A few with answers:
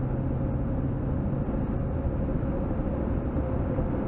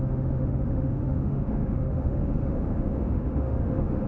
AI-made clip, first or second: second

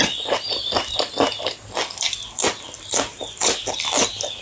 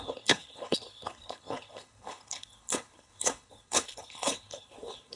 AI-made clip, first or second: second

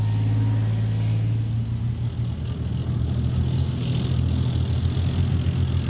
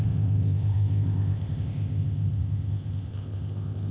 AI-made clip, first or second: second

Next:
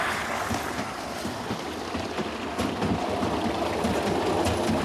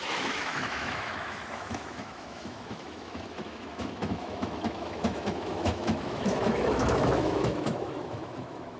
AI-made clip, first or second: second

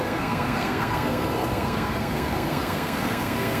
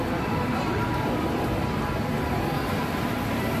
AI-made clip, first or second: first